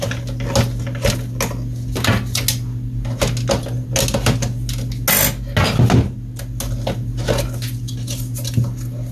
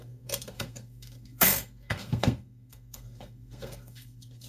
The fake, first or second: second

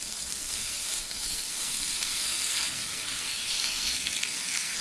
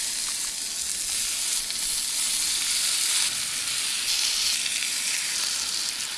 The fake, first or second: first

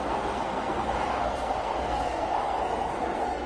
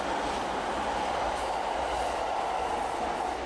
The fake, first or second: first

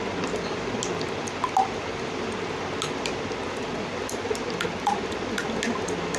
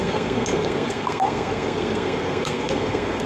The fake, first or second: second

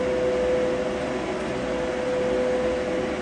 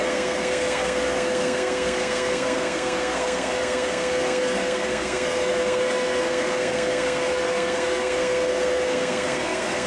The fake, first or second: second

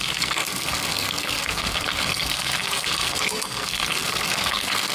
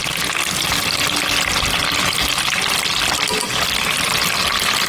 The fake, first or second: first